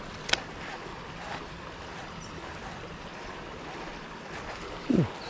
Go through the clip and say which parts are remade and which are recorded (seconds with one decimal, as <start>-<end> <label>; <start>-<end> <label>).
0.0-1.9 recorded; 1.9-4.2 remade; 4.2-5.3 recorded